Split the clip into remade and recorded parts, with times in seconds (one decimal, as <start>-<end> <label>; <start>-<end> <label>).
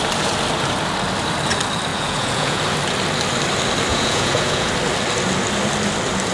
0.0-1.9 recorded; 1.9-2.6 remade; 2.6-3.9 recorded; 3.9-4.7 remade; 4.7-6.3 recorded